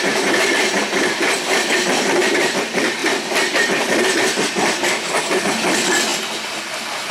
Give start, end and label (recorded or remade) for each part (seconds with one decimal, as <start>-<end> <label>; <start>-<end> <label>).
0.0-7.1 recorded